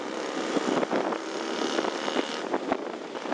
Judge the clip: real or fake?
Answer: real